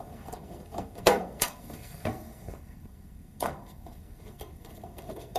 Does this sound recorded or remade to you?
remade